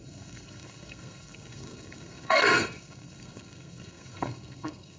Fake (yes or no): yes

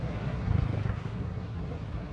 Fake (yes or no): yes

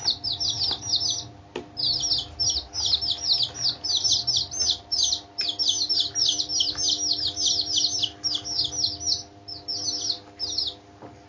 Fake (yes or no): no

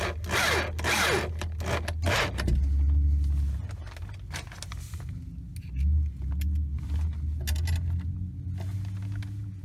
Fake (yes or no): no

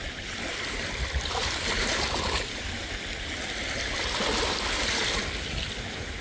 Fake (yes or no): no